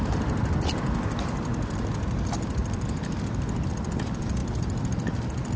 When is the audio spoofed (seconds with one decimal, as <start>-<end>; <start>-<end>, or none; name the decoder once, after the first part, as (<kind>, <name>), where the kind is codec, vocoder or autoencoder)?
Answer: none